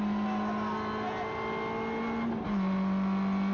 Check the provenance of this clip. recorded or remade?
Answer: recorded